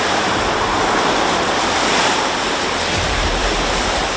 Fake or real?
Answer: fake